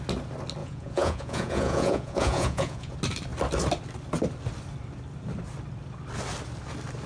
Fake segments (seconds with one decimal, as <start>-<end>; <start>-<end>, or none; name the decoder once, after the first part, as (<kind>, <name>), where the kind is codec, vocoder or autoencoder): 0.6-2.9 (vocoder, Vocos)